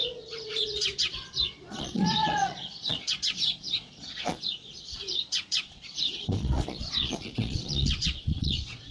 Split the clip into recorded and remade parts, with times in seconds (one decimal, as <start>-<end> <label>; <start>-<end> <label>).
0.0-8.9 remade